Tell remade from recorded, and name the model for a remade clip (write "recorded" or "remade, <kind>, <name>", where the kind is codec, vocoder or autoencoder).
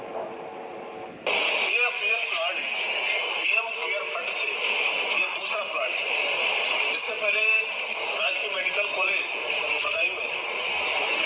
remade, vocoder, BigVGAN v2